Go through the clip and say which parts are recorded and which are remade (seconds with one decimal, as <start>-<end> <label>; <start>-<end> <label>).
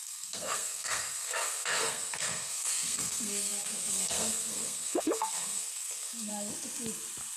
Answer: 0.0-6.3 remade; 6.3-7.4 recorded